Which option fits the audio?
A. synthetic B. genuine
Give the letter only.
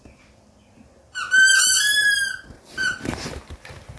B